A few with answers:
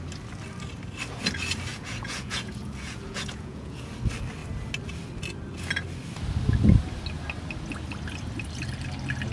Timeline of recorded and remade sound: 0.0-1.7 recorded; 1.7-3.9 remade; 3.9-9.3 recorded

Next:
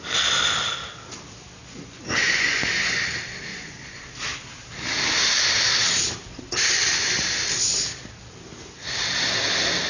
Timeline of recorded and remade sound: 0.0-1.6 recorded; 1.6-3.0 remade; 3.0-3.5 recorded; 3.5-4.0 remade; 4.0-9.9 recorded